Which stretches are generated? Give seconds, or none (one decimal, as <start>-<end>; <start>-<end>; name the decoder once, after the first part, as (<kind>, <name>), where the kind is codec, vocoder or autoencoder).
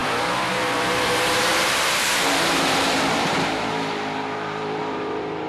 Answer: 0.5-5.5 (vocoder, BigVGAN v2)